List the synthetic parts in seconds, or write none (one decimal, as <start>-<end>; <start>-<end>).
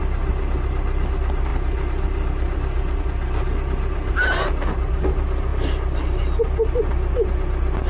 none